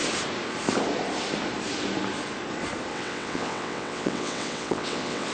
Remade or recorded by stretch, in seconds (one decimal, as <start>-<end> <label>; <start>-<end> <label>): 0.0-2.9 recorded; 2.9-5.3 remade